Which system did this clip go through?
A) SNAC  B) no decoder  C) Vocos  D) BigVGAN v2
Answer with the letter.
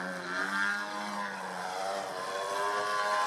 D